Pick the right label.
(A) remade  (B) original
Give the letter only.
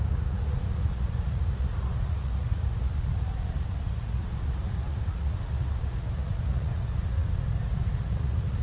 A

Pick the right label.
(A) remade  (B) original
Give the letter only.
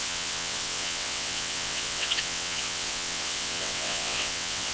A